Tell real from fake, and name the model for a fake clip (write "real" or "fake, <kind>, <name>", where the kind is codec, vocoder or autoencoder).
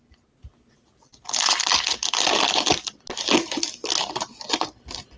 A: real